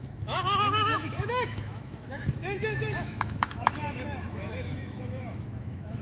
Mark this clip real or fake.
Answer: fake